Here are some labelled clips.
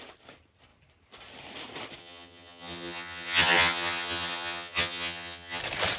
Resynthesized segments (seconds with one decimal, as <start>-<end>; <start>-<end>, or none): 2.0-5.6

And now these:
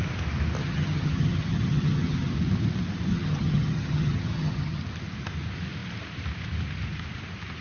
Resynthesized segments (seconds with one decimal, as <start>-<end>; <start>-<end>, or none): 0.6-2.3; 3.1-4.8

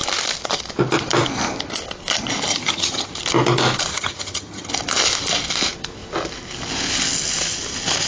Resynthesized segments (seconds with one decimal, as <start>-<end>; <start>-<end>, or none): 2.5-3.1; 3.9-4.7